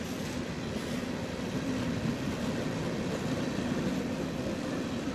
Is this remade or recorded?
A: recorded